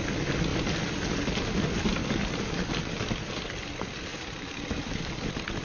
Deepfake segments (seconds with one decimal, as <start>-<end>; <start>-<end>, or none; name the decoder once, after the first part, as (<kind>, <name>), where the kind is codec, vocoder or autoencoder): 4.1-5.0 (vocoder, BigVGAN v2)